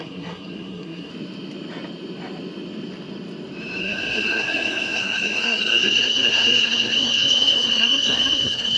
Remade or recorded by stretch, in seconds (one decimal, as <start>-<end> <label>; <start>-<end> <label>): 0.0-1.1 remade; 1.1-3.8 recorded; 3.8-8.8 remade

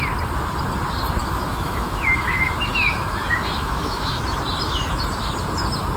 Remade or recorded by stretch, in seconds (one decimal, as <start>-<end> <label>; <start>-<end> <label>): 0.0-1.2 recorded; 1.2-4.2 remade; 4.2-6.0 recorded

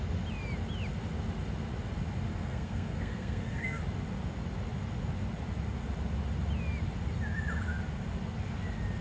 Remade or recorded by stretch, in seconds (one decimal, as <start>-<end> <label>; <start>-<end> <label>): 0.0-2.3 recorded; 2.3-3.8 remade; 3.8-9.0 recorded

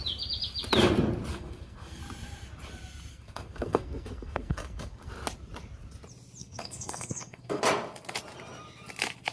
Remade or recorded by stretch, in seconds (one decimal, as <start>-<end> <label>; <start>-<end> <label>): 0.0-1.3 recorded; 1.3-2.0 remade; 2.0-3.1 recorded; 3.1-5.1 remade; 5.1-6.4 recorded; 6.4-7.6 remade; 7.6-9.3 recorded

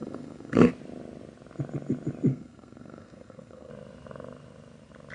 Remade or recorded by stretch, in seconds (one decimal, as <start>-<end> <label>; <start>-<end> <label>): 0.0-0.7 remade; 0.7-2.3 recorded; 2.3-3.7 remade; 3.7-5.1 recorded